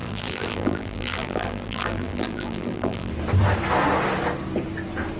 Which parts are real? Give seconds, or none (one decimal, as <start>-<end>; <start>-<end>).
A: 3.1-5.2